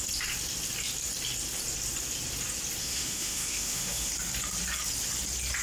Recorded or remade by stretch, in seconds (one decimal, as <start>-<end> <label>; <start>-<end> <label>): 0.0-2.8 recorded; 2.8-4.1 remade; 4.1-5.6 recorded